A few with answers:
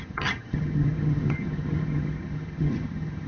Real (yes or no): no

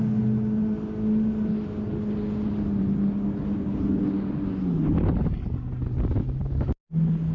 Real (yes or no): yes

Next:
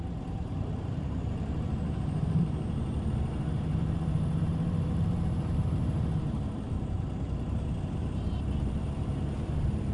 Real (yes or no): no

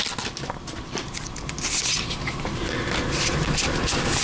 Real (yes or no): yes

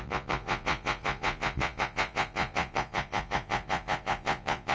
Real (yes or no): no